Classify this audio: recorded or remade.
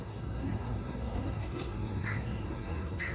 remade